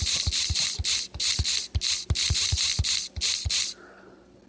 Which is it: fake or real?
real